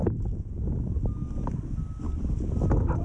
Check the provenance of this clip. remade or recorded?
recorded